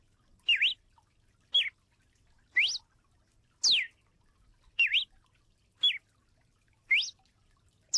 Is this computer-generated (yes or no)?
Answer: no